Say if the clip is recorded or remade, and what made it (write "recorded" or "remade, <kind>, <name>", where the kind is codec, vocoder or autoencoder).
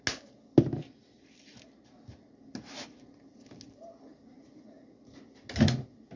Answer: recorded